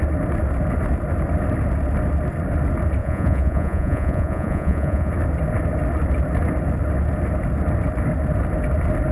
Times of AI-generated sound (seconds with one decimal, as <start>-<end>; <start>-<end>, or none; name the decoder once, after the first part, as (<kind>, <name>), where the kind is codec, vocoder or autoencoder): 3.0-5.1 (vocoder, Vocos)